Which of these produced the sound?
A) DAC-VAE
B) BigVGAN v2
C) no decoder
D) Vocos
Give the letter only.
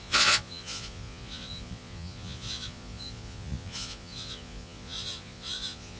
D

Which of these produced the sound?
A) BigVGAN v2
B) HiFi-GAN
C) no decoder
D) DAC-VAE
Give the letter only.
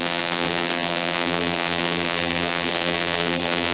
A